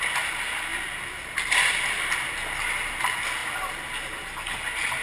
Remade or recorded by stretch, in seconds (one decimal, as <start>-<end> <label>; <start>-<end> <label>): 0.0-5.0 recorded